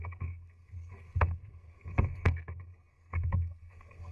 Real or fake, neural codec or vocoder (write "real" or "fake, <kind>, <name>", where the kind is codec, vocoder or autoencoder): fake, codec, SNAC